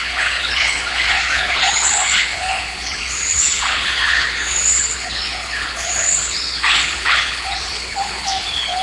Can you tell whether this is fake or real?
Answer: fake